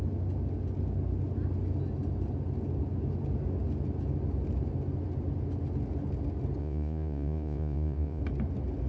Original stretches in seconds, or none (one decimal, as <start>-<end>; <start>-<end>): 0.0-6.6; 8.2-8.9